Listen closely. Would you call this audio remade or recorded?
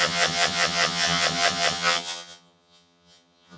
remade